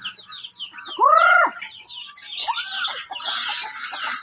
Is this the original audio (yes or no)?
yes